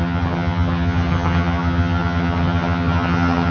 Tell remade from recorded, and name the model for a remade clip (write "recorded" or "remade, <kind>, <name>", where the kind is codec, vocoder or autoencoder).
remade, vocoder, HiFi-GAN